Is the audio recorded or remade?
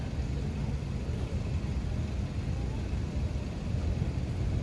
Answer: recorded